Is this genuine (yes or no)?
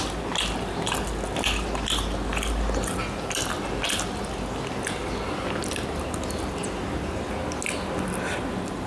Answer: yes